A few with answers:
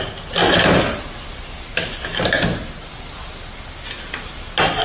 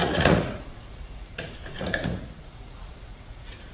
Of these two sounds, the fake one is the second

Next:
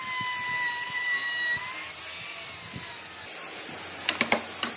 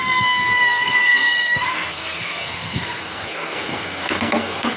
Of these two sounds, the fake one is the second